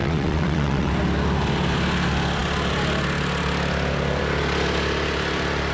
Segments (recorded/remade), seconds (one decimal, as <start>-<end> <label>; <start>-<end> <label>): 0.0-0.9 remade; 0.9-5.7 recorded

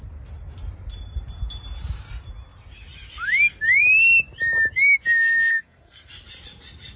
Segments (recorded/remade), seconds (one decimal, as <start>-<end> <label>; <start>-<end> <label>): 0.0-5.5 recorded; 5.5-6.1 remade; 6.1-7.0 recorded

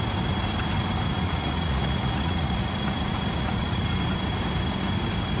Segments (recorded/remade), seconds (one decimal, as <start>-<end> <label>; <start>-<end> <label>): 0.0-1.1 recorded; 1.1-3.8 remade; 3.8-5.4 recorded

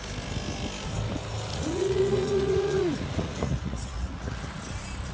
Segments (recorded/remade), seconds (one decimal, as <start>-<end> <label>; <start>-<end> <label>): 0.0-1.5 recorded; 1.5-4.6 remade; 4.6-5.1 recorded

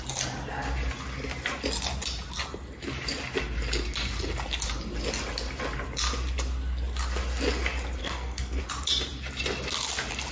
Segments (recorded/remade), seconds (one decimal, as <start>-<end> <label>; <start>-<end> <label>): 0.0-8.0 recorded; 8.0-8.6 remade; 8.6-10.3 recorded

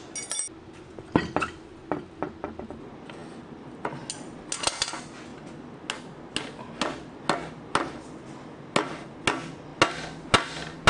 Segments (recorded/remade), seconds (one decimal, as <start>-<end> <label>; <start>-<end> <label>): 0.0-10.9 recorded